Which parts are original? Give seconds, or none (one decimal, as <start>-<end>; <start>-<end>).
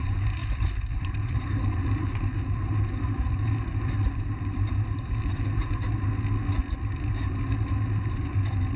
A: 5.8-7.1